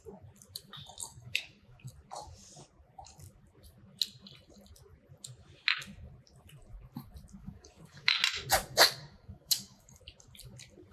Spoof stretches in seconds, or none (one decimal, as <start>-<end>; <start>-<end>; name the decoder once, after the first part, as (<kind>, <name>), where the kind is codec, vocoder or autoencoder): 1.1-1.9 (codec, DAC); 7.4-8.1; 9.0-10.0